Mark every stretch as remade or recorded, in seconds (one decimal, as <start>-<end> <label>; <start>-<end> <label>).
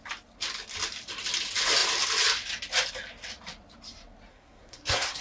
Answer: 0.0-4.3 recorded; 4.3-5.2 remade